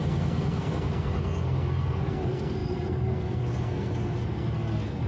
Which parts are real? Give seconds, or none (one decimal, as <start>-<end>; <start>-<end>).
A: none